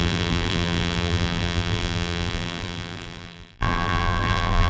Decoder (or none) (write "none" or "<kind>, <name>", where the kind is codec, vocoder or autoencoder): vocoder, BigVGAN v2